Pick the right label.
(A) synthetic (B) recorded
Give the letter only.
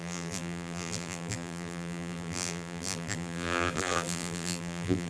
A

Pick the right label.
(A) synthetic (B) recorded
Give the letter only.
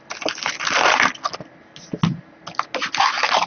B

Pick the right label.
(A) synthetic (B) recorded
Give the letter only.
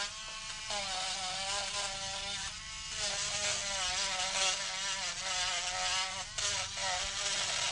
B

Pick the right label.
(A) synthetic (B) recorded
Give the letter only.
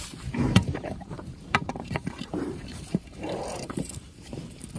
A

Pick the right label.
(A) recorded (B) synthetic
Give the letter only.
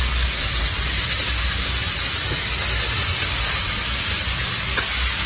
A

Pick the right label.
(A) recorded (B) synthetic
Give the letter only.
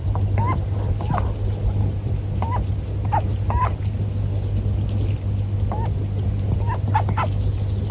A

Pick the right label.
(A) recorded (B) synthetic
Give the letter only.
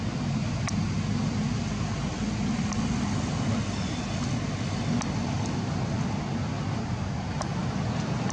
A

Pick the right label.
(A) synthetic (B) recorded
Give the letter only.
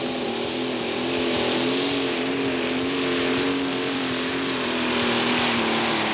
A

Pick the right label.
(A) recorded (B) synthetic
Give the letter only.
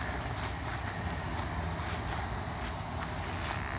A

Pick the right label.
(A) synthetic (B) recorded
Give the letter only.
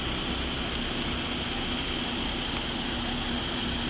B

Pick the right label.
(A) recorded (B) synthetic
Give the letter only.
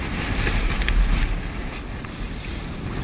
B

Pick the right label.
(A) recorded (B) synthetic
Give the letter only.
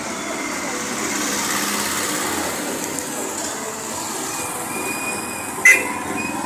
A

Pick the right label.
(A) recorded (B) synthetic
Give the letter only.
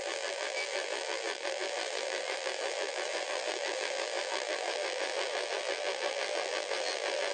B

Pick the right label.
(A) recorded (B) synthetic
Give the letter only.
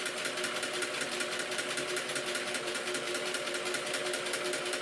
A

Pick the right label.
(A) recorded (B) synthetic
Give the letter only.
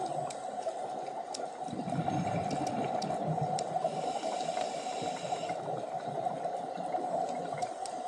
B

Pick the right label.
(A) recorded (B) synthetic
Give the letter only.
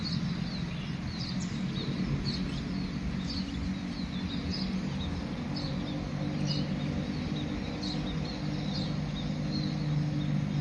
A